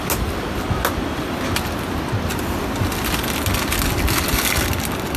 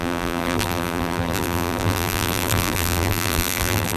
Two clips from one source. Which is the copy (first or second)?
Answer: second